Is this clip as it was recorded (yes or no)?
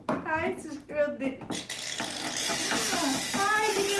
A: yes